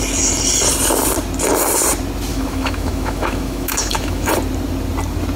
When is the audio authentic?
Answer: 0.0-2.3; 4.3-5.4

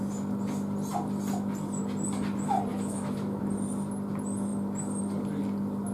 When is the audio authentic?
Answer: 0.0-2.7; 3.4-5.9

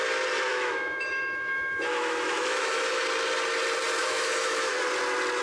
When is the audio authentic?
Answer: 0.0-0.5; 3.0-4.0; 4.8-5.4

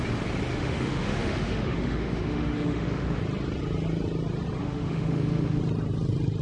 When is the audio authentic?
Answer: 0.0-0.5; 3.2-4.6; 5.6-6.4

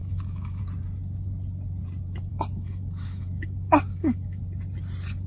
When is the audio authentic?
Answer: 0.6-2.3; 4.4-5.3

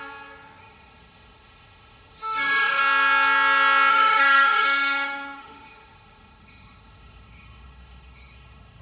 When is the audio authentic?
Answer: 0.0-0.6; 2.8-3.9

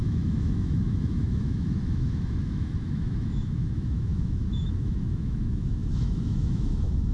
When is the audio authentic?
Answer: none